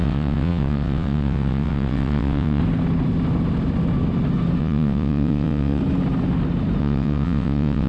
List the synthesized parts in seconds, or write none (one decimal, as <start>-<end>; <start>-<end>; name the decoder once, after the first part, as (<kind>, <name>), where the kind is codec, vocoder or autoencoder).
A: 0.0-2.6 (vocoder, WaveNeXt); 4.6-5.8; 6.8-7.9